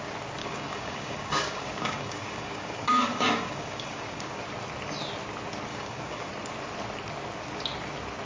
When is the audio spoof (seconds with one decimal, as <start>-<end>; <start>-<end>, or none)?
0.4-4.4; 5.7-6.3